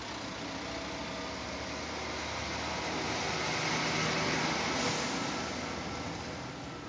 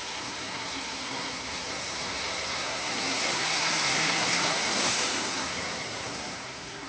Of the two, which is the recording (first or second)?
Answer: first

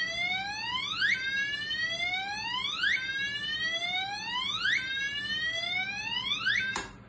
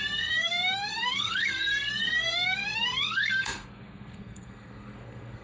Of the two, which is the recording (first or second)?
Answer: first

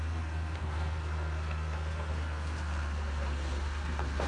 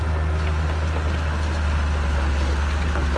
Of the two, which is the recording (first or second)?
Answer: second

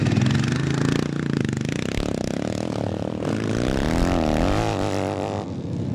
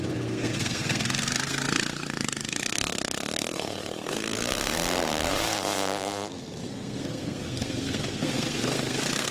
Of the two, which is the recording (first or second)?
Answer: first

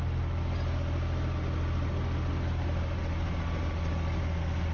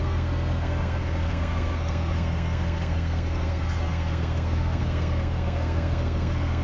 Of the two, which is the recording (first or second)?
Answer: first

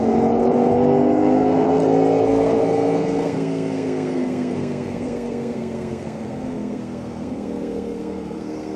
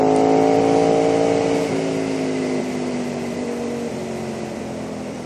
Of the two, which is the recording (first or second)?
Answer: second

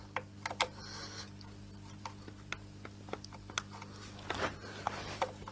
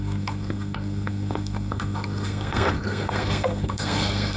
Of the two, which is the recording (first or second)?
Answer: first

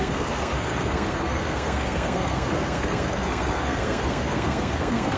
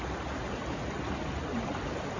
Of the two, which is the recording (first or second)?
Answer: second